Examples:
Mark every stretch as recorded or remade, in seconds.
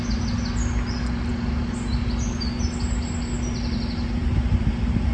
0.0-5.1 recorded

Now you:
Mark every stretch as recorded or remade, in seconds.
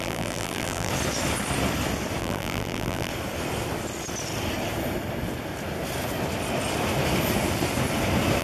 0.0-0.9 remade; 0.9-2.2 recorded; 2.2-3.1 remade; 3.1-8.4 recorded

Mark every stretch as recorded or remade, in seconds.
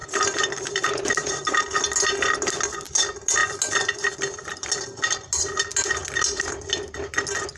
0.0-1.6 remade; 1.6-7.6 recorded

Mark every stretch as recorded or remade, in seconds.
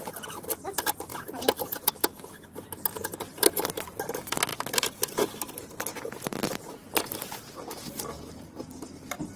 0.0-1.1 recorded; 1.1-1.9 remade; 1.9-3.0 recorded; 3.0-3.8 remade; 3.8-4.5 recorded; 4.5-7.2 remade; 7.2-9.4 recorded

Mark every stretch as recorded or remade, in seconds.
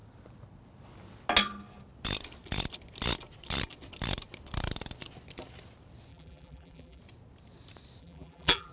0.0-6.1 recorded; 6.1-7.0 remade; 7.0-8.0 recorded; 8.0-8.7 remade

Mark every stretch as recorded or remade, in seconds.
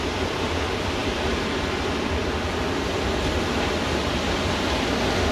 0.0-1.0 recorded; 1.0-2.2 remade; 2.2-5.3 recorded